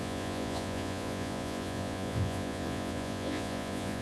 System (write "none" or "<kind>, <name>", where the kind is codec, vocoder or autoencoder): vocoder, Vocos